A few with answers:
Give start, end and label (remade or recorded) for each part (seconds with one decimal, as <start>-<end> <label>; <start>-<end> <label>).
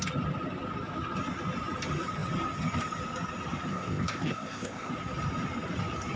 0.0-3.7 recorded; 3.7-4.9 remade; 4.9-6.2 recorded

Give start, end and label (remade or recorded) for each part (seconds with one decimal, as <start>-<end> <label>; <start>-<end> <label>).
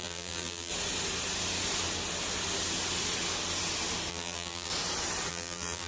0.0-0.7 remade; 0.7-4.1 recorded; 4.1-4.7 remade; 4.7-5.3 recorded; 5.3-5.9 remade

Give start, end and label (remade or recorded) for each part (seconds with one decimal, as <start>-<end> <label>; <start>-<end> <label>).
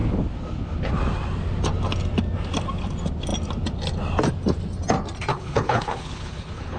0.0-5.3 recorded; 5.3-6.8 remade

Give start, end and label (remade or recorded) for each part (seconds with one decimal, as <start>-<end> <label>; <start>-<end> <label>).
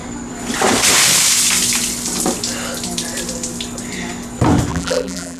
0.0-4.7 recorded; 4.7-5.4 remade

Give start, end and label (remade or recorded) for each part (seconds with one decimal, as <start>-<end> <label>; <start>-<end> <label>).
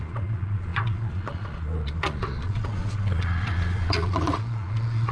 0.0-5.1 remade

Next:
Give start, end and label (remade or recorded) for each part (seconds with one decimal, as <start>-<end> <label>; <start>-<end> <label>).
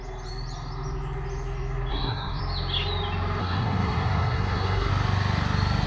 0.0-1.9 recorded; 1.9-2.4 remade; 2.4-3.4 recorded; 3.4-4.9 remade; 4.9-5.9 recorded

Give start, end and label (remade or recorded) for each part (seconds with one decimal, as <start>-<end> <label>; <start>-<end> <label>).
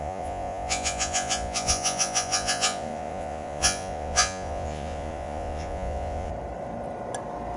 0.0-6.3 remade; 6.3-7.6 recorded